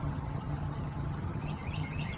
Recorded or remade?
remade